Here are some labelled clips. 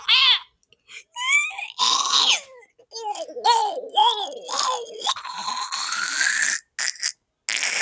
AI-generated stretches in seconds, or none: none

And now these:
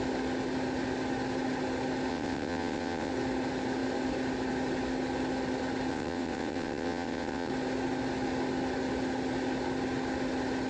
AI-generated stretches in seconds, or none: 2.1-3.1 (vocoder, WaveNeXt); 5.9-7.5

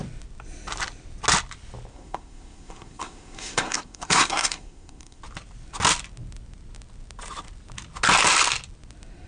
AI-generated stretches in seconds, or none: 1.9-5.2 (codec, SNAC)

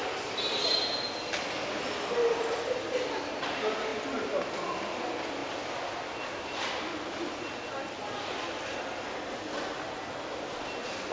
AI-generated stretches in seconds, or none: none

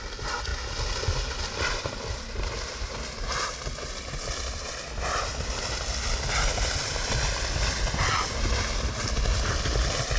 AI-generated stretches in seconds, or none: none

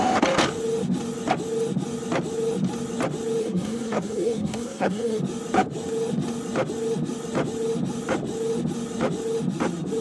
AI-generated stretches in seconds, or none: 3.4-5.2 (codec, SNAC)

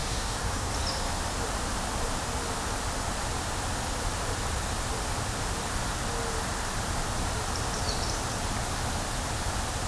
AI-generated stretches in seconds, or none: 0.0-0.7 (codec, DAC)

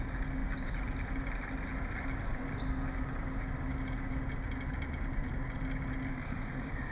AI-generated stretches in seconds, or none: 6.1-6.9 (autoencoder, DAC-VAE)